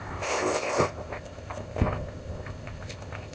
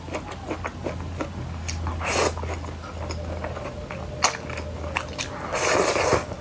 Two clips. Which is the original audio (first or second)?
second